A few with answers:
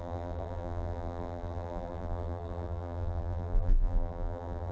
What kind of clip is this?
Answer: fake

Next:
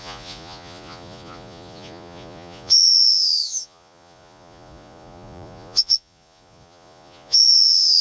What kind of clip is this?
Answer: fake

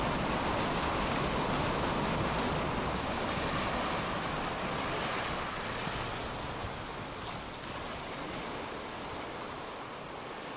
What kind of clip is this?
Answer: real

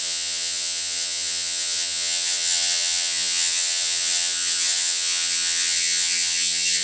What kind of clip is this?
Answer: fake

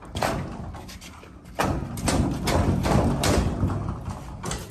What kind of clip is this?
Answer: real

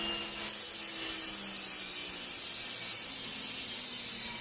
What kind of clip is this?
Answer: real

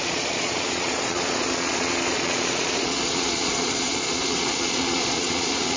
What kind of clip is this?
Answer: fake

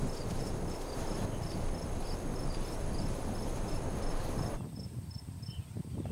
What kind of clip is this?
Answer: real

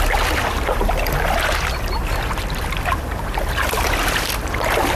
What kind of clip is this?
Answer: fake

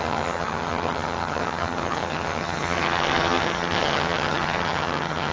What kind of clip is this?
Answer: fake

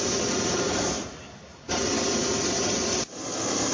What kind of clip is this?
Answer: real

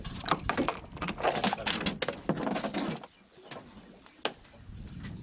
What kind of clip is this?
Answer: real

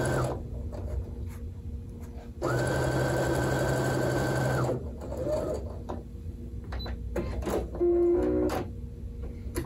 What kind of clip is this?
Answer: real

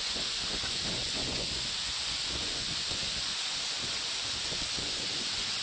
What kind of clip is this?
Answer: fake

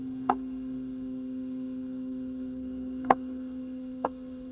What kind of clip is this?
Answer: fake